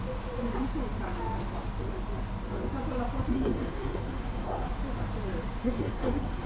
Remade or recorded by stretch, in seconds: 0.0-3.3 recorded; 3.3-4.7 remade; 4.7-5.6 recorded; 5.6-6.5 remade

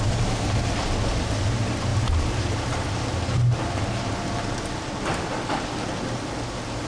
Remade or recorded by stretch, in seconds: 0.0-6.9 recorded

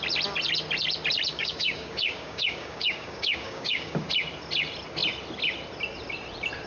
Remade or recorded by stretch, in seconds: 0.0-1.3 recorded; 1.3-4.0 remade; 4.0-6.7 recorded

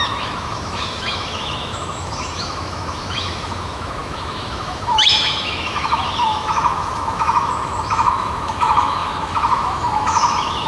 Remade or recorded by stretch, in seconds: 0.0-10.7 remade

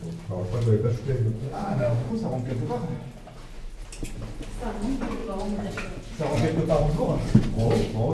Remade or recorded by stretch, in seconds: 0.0-1.4 recorded; 1.4-2.1 remade; 2.1-8.1 recorded

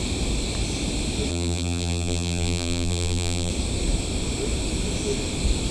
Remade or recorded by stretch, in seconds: 0.0-1.3 recorded; 1.3-3.5 remade; 3.5-5.7 recorded

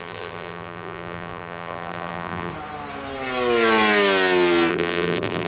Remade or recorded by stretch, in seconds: 0.0-2.5 remade; 2.5-4.7 recorded; 4.7-5.5 remade

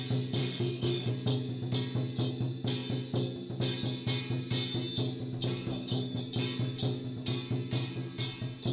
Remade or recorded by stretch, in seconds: 0.0-0.4 recorded; 0.4-1.1 remade; 1.1-5.7 recorded; 5.7-6.2 remade; 6.2-8.7 recorded